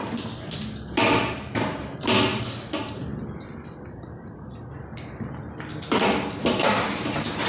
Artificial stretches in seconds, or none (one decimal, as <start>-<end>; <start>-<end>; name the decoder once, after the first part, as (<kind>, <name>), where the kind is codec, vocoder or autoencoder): 2.3-6.8 (vocoder, BigVGAN v2)